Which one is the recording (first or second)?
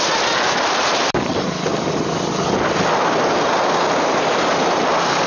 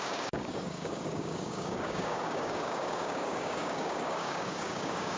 first